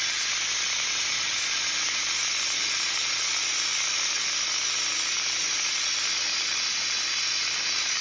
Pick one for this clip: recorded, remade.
recorded